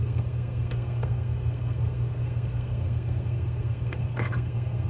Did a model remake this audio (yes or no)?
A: yes